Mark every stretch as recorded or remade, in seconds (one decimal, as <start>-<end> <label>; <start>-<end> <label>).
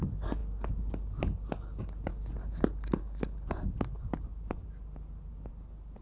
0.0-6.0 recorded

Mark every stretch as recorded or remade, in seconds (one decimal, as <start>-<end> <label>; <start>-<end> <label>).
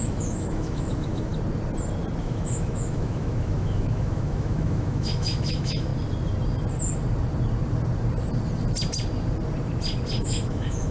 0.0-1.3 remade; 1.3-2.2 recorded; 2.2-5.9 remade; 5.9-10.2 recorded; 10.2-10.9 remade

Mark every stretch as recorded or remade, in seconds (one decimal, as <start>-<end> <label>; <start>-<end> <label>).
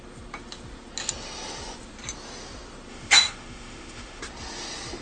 0.0-2.9 recorded; 2.9-4.2 remade; 4.2-5.0 recorded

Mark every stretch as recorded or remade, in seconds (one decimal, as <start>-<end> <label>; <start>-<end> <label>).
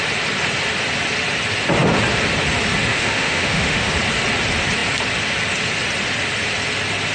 0.0-2.9 recorded; 2.9-3.9 remade; 3.9-7.1 recorded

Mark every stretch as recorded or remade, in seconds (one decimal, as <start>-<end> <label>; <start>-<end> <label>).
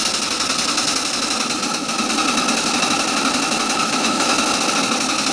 0.0-3.8 recorded; 3.8-4.3 remade; 4.3-5.3 recorded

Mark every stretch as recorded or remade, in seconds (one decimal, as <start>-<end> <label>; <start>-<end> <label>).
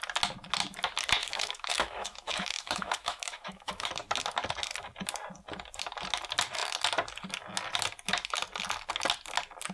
0.0-1.2 recorded; 1.2-3.9 remade; 3.9-9.7 recorded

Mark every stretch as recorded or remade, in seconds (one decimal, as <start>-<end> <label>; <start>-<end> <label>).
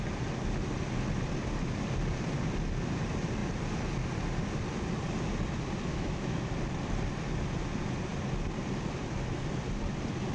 0.0-5.9 recorded; 5.9-6.5 remade; 6.5-10.3 recorded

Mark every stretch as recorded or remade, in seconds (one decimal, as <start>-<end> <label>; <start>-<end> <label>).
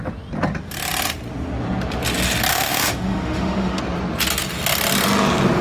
0.0-2.5 recorded; 2.5-3.8 remade; 3.8-5.6 recorded